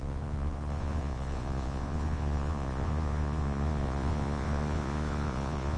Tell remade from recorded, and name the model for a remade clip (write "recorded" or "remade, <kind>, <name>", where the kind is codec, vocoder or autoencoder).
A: remade, vocoder, Vocos